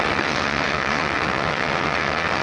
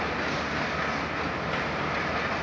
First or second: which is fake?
first